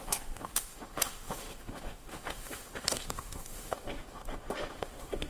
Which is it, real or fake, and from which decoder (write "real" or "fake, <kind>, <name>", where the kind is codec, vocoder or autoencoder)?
fake, autoencoder, DAC-VAE